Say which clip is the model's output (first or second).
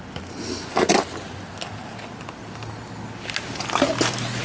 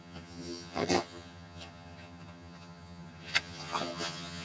second